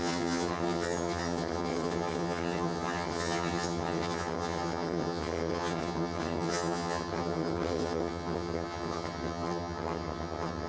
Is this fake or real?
fake